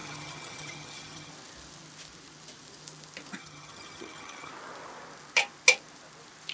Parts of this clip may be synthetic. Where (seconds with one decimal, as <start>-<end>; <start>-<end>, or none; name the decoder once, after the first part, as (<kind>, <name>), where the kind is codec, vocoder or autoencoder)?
0.0-1.3 (vocoder, HiFi-GAN); 3.4-4.5